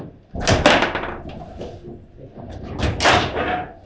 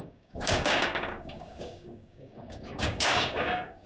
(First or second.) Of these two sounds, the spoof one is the second